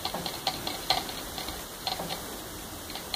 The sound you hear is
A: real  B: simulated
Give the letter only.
B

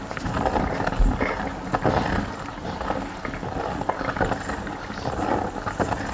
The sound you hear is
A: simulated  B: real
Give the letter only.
B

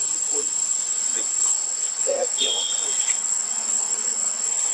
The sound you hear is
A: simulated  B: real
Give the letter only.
A